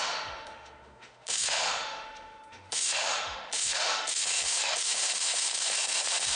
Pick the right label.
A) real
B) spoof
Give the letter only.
B